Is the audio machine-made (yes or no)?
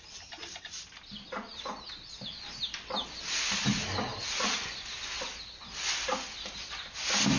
no